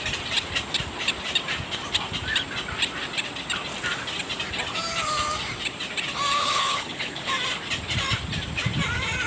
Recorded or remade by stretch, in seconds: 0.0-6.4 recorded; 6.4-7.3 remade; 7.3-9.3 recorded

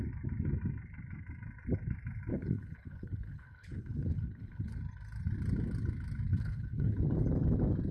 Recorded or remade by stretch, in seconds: 0.0-2.3 recorded; 2.3-4.8 remade; 4.8-6.3 recorded; 6.3-7.0 remade; 7.0-7.9 recorded

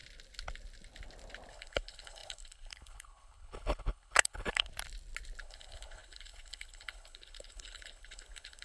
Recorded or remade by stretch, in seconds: 0.0-1.5 recorded; 1.5-4.7 remade; 4.7-5.4 recorded; 5.4-8.6 remade

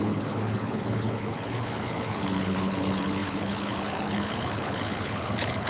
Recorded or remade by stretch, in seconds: 0.0-5.7 remade

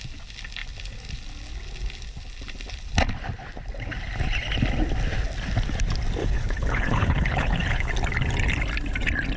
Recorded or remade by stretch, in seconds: 0.0-6.2 recorded; 6.2-7.9 remade; 7.9-9.4 recorded

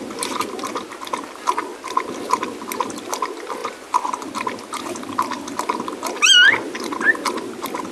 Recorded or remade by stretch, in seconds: 0.0-7.9 recorded